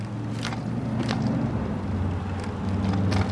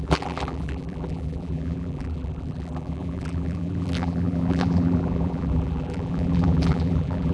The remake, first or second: second